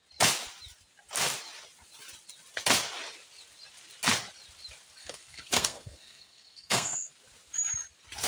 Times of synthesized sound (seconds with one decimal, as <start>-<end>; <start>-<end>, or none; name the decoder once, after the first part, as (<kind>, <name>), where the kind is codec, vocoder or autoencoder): 5.0-7.1 (codec, SNAC)